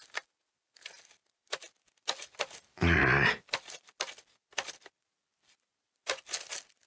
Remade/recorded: recorded